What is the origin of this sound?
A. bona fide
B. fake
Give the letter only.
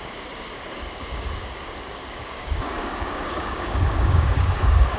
B